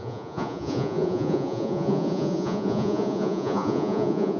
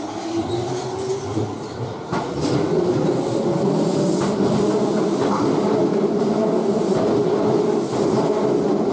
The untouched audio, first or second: second